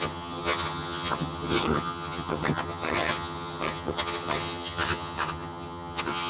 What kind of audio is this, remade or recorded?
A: remade